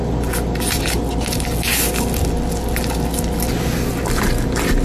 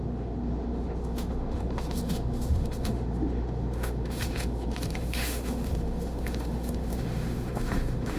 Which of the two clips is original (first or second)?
first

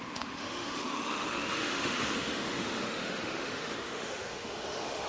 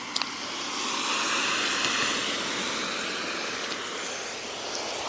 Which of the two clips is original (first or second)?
second